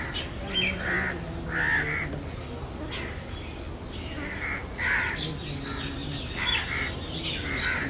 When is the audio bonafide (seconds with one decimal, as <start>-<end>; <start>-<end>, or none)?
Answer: 0.0-7.9

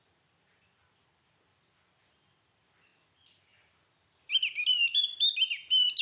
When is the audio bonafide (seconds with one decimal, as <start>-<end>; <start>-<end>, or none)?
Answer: 0.0-6.0

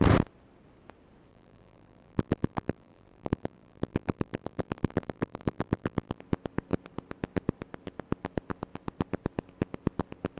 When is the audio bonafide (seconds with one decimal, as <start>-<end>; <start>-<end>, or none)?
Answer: 0.0-1.3; 6.2-10.4